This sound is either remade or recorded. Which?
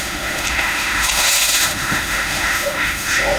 remade